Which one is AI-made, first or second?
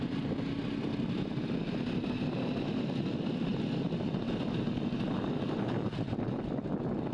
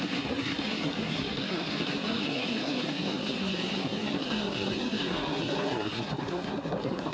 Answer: second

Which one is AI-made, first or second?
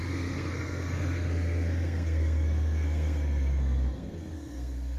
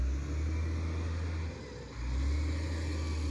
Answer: first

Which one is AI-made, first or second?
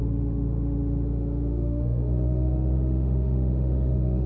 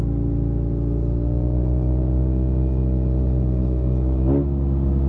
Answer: first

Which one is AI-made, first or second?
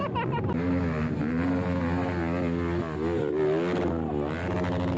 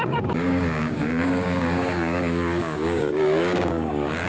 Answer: second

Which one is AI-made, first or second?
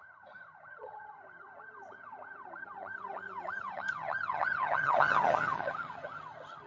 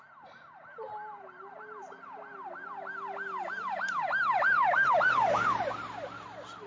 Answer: first